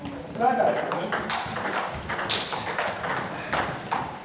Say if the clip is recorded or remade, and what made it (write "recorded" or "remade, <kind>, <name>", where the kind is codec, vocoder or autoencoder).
recorded